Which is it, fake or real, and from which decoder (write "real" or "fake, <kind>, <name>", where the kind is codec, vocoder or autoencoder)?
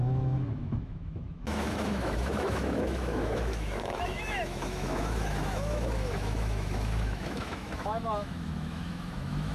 fake, autoencoder, DAC-VAE